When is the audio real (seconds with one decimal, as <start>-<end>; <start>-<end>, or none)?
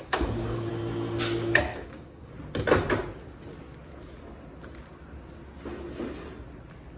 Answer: 0.7-1.7; 2.3-7.0